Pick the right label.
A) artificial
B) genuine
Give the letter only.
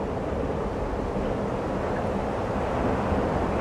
B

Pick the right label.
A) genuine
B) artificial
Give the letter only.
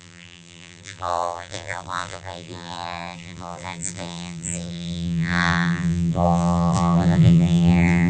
B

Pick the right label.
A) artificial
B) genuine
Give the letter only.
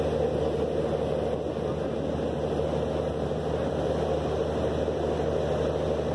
B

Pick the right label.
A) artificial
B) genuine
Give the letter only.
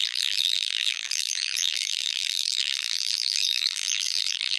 A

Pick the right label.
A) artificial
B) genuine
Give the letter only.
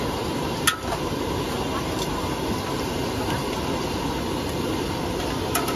B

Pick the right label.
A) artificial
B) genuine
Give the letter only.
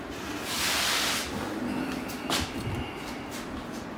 B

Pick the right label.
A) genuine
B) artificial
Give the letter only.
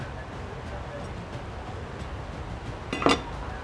A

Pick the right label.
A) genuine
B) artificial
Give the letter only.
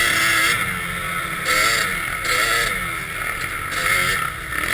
A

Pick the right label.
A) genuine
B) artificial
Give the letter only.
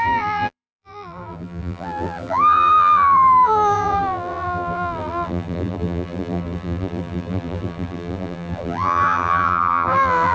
B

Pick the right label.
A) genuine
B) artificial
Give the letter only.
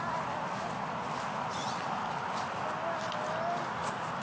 A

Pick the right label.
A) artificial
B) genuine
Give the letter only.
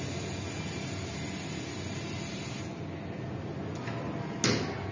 B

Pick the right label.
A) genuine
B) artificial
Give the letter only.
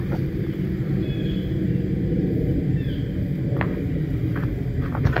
A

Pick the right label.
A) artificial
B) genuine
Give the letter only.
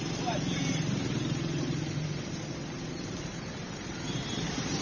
A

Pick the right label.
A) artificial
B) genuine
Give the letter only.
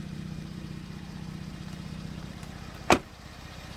A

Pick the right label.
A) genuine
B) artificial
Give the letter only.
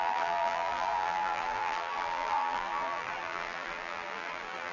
B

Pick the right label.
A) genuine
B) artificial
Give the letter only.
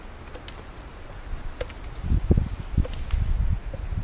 A